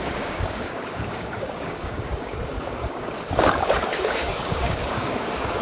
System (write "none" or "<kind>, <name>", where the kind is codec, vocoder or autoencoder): codec, DAC